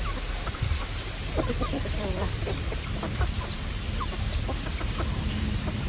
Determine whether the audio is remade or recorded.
remade